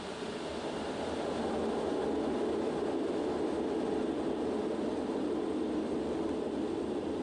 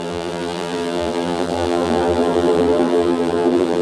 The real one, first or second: first